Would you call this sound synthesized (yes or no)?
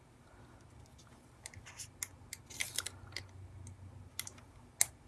no